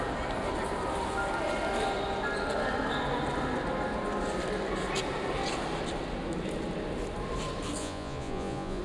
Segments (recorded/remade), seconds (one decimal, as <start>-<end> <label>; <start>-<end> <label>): 0.0-7.8 recorded; 7.8-8.8 remade